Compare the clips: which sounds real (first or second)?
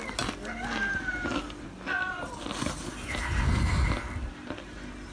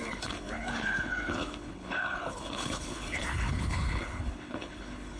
first